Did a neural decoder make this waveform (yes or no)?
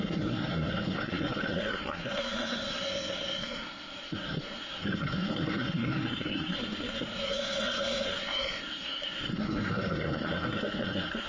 yes